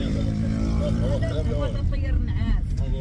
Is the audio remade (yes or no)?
yes